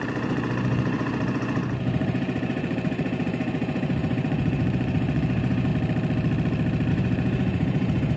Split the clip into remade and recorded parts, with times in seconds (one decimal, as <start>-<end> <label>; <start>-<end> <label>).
0.0-5.7 remade; 5.7-6.9 recorded; 6.9-8.2 remade